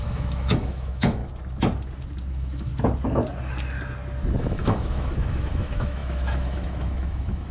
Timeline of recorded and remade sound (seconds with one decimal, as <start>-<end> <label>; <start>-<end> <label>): 0.0-1.2 remade; 1.2-2.3 recorded; 2.3-2.7 remade; 2.7-4.4 recorded; 4.4-7.5 remade